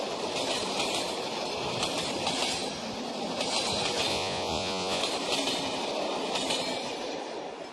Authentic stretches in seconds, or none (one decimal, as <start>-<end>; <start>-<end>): 0.0-4.1; 5.0-7.7